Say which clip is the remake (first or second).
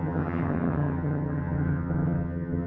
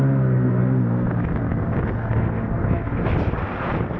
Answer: first